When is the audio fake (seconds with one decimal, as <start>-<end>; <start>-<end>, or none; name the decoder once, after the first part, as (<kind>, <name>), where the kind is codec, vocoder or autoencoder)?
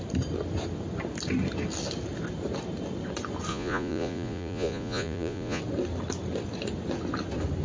3.5-5.6 (vocoder, Vocos)